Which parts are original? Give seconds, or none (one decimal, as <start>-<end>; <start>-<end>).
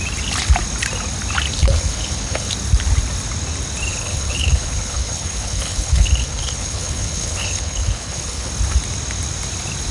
0.0-1.6; 2.5-3.9; 8.5-9.9